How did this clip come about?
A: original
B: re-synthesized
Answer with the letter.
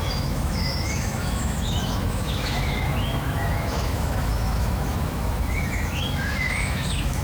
B